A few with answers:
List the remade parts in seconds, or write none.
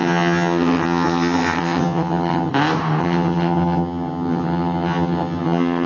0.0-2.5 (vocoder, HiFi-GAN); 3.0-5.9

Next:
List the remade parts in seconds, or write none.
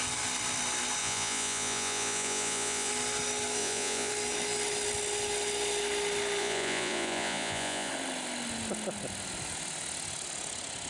1.0-2.9 (vocoder, Vocos); 3.6-4.1; 6.4-7.9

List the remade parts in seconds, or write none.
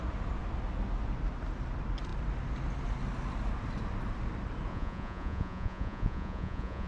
4.7-6.9 (vocoder, Vocos)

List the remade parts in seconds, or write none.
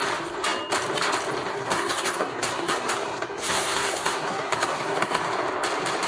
1.5-5.2 (codec, SNAC)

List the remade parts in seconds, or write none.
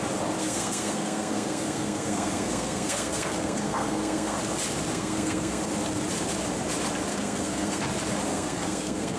0.4-4.4 (codec, SNAC); 4.9-5.6; 7.1-7.8; 8.3-9.2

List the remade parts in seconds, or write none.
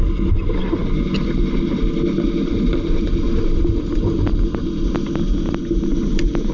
none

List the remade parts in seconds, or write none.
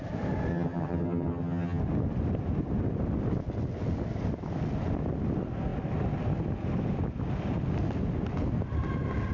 0.5-1.8 (vocoder, HiFi-GAN)